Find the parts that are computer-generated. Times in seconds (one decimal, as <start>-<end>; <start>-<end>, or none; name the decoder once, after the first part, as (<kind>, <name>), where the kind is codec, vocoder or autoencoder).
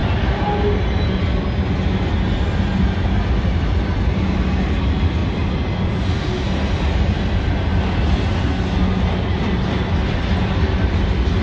none